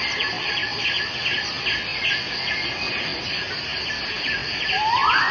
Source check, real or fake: real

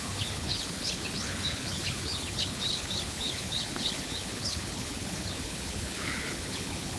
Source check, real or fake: fake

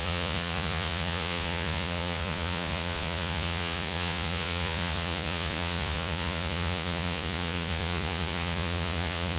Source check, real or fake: fake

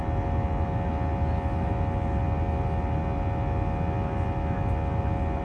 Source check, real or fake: real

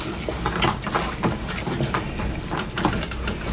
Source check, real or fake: real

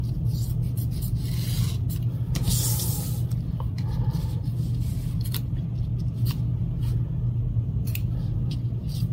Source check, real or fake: real